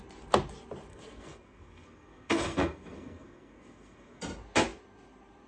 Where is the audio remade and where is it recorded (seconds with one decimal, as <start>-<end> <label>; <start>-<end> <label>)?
0.0-0.9 recorded; 0.9-4.2 remade; 4.2-5.5 recorded